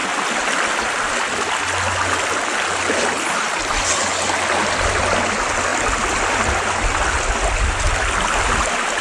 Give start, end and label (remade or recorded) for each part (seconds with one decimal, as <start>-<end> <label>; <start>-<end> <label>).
0.0-9.0 recorded